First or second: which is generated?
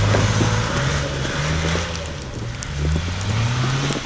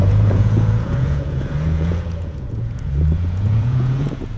second